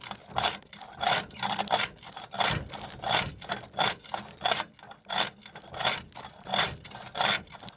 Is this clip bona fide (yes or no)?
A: yes